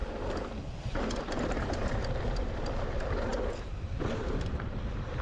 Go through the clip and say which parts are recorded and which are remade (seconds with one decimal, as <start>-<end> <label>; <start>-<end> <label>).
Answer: 0.0-1.2 recorded; 1.2-3.3 remade; 3.3-4.1 recorded; 4.1-5.2 remade